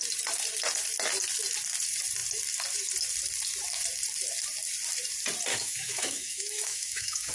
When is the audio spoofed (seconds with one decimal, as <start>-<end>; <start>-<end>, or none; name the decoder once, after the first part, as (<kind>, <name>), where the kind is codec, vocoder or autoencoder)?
5.5-7.3 (autoencoder, DAC-VAE)